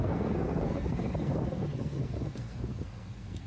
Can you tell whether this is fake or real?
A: fake